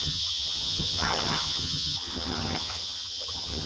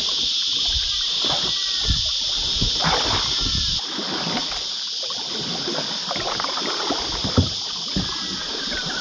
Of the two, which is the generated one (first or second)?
first